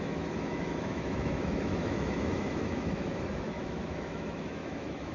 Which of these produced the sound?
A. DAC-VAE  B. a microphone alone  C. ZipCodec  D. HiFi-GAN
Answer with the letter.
A